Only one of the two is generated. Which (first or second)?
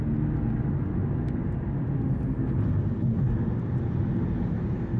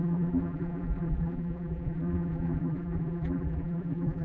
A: second